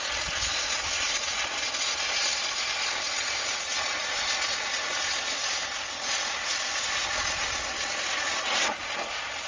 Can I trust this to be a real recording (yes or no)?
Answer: yes